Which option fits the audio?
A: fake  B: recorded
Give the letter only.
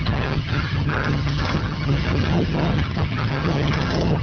A